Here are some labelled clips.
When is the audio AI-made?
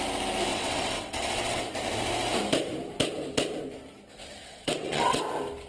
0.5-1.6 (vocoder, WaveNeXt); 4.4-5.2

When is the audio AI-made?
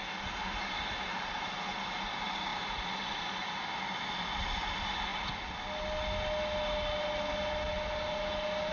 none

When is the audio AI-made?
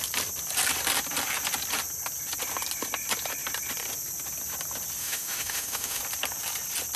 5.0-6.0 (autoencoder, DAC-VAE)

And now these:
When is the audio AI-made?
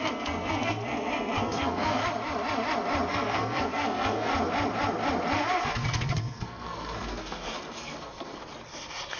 0.0-2.0 (codec, SNAC); 3.1-4.3; 5.7-8.4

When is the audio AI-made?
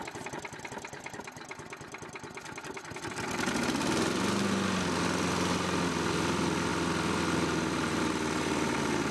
none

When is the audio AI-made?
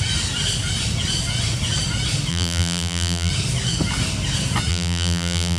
2.3-3.3 (vocoder, BigVGAN v2); 4.7-5.6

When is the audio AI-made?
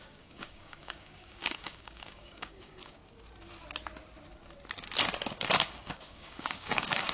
0.0-3.0 (codec, DAC); 5.7-7.1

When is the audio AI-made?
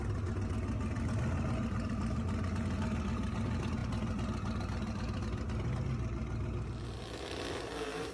none